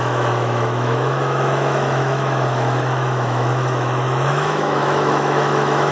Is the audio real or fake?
fake